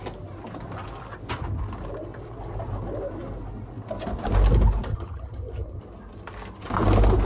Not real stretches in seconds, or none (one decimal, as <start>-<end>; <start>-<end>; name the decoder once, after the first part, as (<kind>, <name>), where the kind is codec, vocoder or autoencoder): 4.9-5.8 (vocoder, HiFi-GAN)